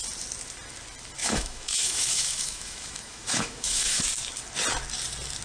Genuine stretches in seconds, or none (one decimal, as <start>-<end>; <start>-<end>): 0.0-1.2; 4.0-5.4